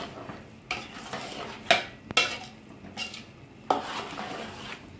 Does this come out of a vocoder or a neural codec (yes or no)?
no